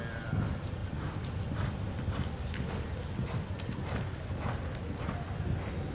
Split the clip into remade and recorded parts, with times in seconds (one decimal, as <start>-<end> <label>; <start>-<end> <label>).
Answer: 0.0-5.9 recorded